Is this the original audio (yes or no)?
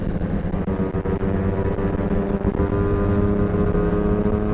yes